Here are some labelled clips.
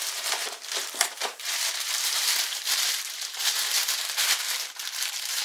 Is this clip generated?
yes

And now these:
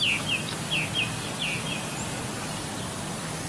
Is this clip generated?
no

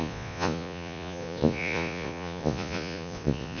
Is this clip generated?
yes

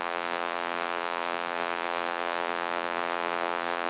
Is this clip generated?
yes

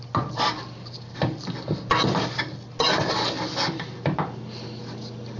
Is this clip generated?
no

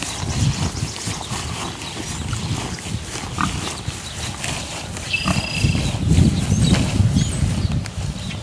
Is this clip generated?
no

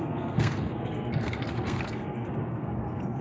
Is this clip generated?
yes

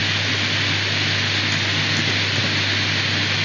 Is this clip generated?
no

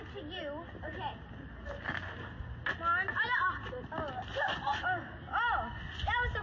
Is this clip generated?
no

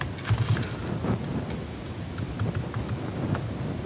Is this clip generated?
no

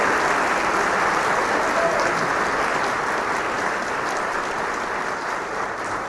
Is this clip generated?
no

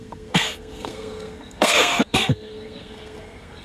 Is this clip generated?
yes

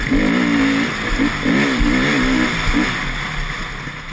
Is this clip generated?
no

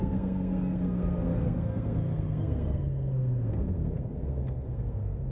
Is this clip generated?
yes